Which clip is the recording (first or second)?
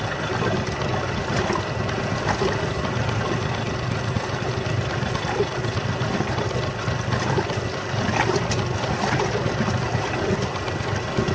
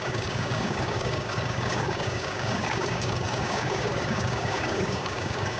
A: first